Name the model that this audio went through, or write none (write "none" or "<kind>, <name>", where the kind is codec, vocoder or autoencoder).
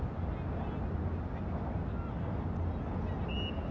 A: none